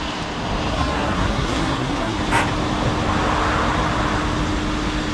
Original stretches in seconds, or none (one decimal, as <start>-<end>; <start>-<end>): 0.0-0.7; 2.2-5.1